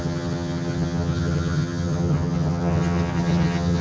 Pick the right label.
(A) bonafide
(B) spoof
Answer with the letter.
B